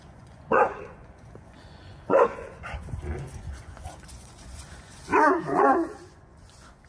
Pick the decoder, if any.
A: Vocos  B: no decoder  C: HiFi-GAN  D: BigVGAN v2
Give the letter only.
A